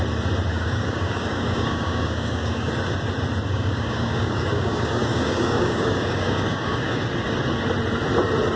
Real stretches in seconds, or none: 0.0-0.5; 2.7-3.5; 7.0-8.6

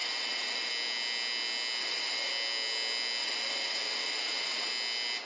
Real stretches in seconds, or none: 0.7-1.8; 2.3-3.2; 4.7-5.3

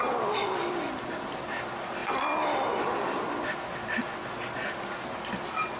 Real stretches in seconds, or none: 0.0-5.8

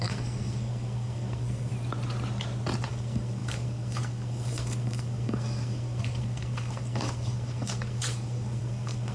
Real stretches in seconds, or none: 1.7-2.9

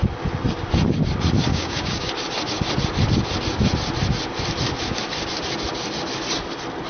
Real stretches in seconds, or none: 0.0-1.5; 2.1-6.9

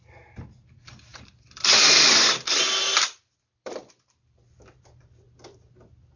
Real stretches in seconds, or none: 0.0-1.1; 4.8-6.2

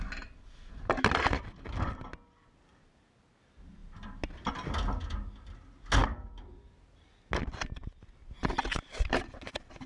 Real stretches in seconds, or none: 0.0-9.9

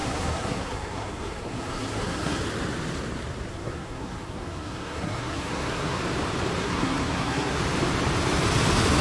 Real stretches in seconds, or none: 2.4-3.5; 6.0-6.6; 7.6-9.0